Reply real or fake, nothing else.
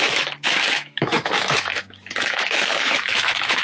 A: fake